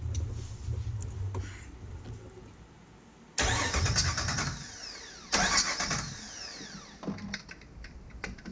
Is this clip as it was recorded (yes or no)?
yes